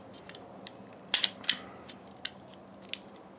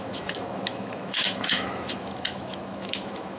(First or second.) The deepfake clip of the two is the second